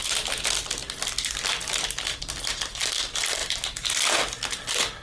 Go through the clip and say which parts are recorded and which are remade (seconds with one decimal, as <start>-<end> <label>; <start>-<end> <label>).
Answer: 0.0-5.0 recorded